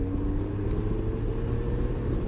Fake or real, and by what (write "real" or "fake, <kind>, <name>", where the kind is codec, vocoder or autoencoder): real